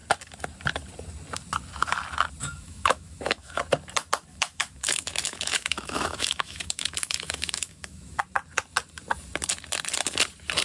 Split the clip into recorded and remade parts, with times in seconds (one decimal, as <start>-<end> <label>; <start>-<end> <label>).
0.0-2.4 recorded; 2.4-3.6 remade; 3.6-4.3 recorded; 4.3-8.2 remade; 8.2-10.6 recorded